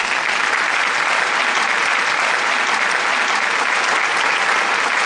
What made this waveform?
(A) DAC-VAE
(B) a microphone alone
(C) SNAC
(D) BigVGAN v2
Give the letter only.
B